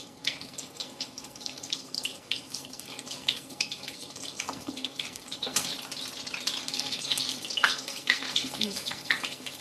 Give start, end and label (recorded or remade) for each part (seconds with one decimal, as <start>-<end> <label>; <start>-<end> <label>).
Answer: 0.0-5.7 remade; 5.7-6.6 recorded; 6.6-9.6 remade